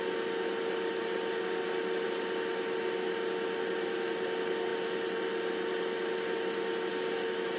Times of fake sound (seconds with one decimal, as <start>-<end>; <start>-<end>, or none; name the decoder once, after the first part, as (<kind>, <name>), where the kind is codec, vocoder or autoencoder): none